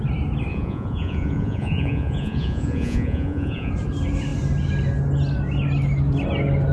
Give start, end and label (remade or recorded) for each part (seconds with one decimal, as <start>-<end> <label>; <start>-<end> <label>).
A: 0.0-0.5 recorded; 0.5-3.7 remade; 3.7-6.7 recorded